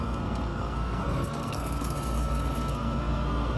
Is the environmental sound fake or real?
fake